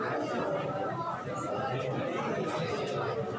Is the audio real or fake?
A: real